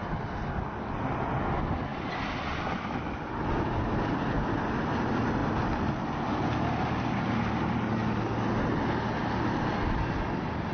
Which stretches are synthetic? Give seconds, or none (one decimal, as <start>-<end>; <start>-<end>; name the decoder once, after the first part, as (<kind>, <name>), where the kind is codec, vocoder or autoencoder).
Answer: none